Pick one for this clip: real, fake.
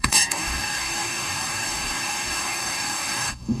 fake